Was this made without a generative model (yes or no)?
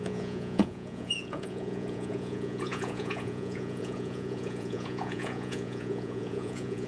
no